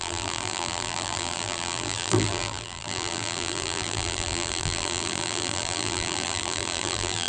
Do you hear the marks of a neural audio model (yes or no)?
yes